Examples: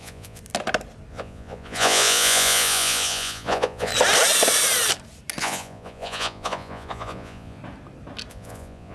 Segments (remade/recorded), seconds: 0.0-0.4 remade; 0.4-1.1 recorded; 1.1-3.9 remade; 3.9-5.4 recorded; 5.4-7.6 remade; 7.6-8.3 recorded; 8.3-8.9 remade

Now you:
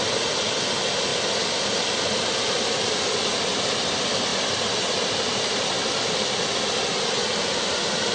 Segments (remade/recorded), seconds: 0.0-8.1 recorded

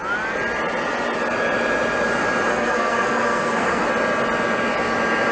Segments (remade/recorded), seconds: 0.0-2.5 recorded; 2.5-3.9 remade; 3.9-5.3 recorded

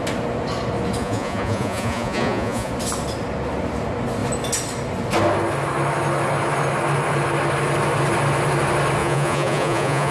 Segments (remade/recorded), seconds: 0.0-1.0 recorded; 1.0-2.7 remade; 2.7-9.0 recorded; 9.0-10.1 remade

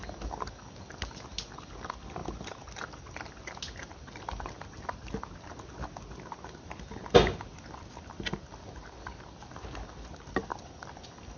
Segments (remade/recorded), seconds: 0.0-11.4 recorded

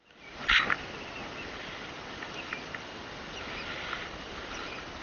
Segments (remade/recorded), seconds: 0.0-5.0 recorded